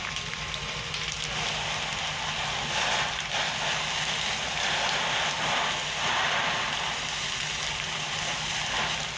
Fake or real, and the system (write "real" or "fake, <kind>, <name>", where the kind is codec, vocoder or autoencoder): real